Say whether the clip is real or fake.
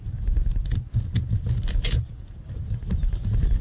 real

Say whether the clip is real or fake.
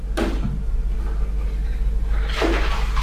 real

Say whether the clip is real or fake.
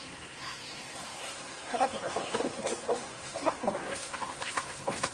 fake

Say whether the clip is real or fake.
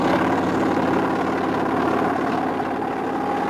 real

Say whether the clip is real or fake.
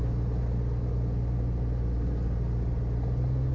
real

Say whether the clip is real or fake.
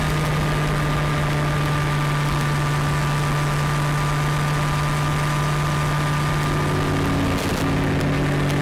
real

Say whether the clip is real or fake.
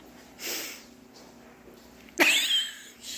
real